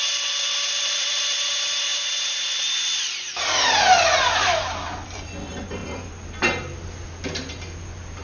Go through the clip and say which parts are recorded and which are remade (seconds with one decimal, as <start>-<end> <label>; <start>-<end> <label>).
0.0-8.2 recorded